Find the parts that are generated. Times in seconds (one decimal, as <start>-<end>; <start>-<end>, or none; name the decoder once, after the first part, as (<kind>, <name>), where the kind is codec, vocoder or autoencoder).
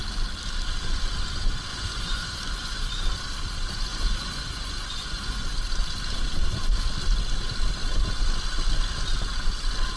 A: 1.7-3.0 (vocoder, Vocos); 3.9-5.4